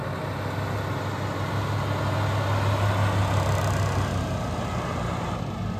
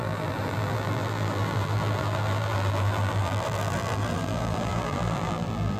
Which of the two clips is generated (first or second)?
second